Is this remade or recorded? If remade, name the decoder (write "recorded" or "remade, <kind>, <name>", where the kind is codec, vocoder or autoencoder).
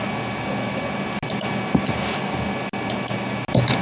recorded